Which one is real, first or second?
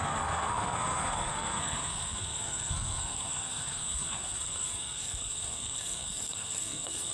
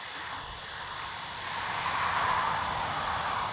second